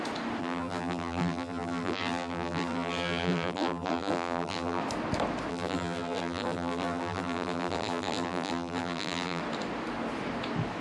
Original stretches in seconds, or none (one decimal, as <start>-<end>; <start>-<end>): 0.0-0.4; 4.8-5.5; 9.4-10.8